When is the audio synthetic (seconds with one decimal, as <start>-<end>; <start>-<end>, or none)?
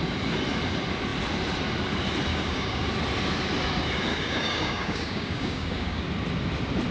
2.3-2.9; 4.1-6.0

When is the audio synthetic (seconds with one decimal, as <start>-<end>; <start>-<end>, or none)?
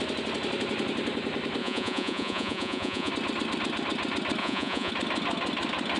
1.6-3.1; 4.4-4.9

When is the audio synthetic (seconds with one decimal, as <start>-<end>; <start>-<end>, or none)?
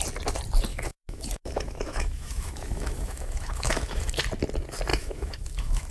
0.7-4.2; 4.9-5.9